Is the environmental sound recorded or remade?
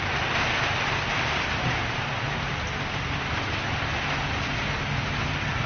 recorded